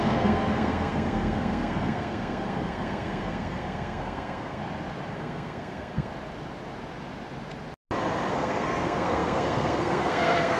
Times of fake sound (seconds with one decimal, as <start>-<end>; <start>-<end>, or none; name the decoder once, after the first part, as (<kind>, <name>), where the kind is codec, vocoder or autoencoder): 0.0-4.6 (codec, SNAC); 5.1-6.1; 8.3-10.6